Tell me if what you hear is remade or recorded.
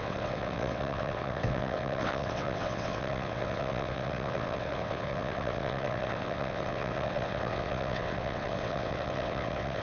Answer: remade